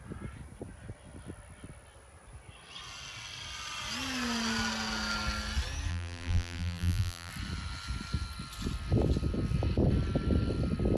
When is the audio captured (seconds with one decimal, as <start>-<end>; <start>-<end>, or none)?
0.0-5.9; 7.3-11.0